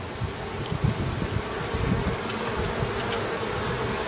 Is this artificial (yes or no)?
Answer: no